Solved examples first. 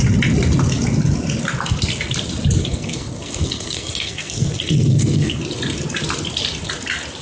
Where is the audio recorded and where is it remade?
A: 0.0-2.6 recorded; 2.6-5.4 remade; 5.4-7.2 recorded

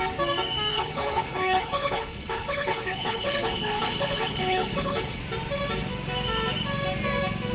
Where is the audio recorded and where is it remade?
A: 0.0-0.7 recorded; 0.7-5.2 remade; 5.2-7.5 recorded

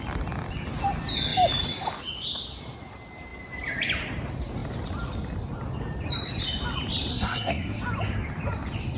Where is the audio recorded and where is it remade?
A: 0.0-7.1 recorded; 7.1-7.8 remade; 7.8-9.0 recorded